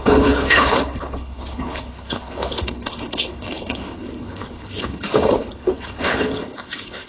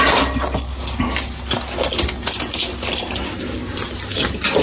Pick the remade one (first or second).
first